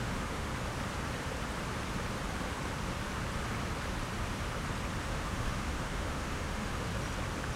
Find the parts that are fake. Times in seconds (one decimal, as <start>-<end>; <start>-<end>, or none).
0.0-0.5; 5.0-6.9